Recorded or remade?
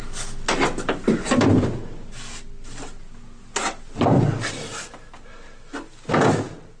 recorded